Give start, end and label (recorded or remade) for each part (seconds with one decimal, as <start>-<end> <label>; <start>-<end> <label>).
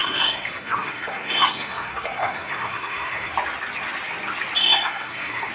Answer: 0.0-3.3 remade; 3.3-4.6 recorded; 4.6-5.5 remade